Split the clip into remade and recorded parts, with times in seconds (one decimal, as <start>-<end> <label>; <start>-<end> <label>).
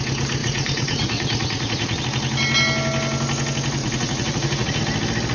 0.0-0.4 recorded; 0.4-2.0 remade; 2.0-3.8 recorded; 3.8-4.8 remade; 4.8-5.3 recorded